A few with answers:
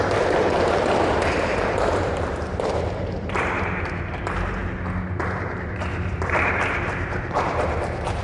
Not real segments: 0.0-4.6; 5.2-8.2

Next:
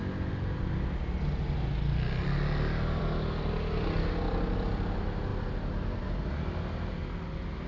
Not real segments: none

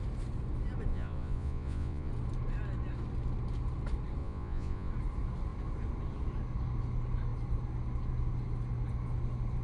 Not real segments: 0.9-2.1; 4.2-4.9

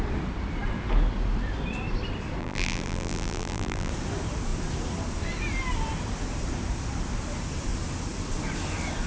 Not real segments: 2.4-3.9

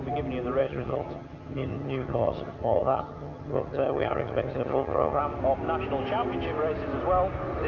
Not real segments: 0.6-5.2

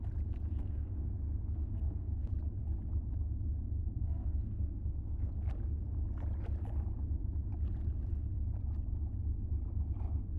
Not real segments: 0.5-1.1; 1.5-2.3; 4.0-5.3

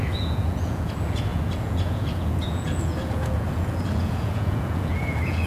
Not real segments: 0.0-5.5